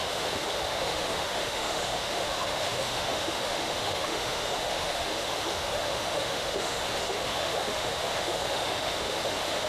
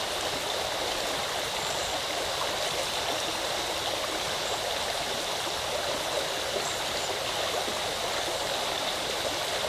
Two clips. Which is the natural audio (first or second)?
second